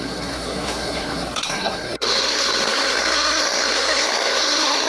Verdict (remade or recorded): remade